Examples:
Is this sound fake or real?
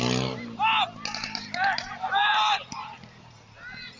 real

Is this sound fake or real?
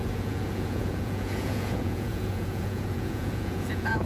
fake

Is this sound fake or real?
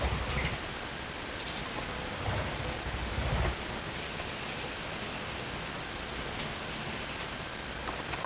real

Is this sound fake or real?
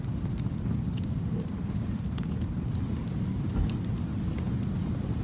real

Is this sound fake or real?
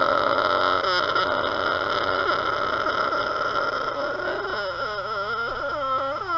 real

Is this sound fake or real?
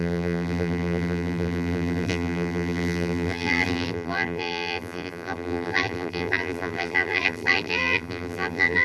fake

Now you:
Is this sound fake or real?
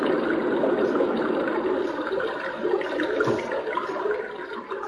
real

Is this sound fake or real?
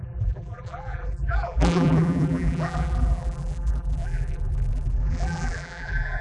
fake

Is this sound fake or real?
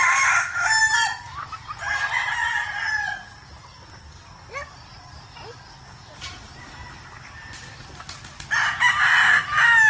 real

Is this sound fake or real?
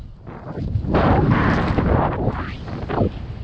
real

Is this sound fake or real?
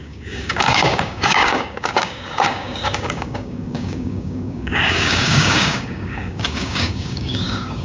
fake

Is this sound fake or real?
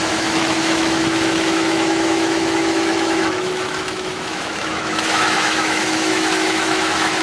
fake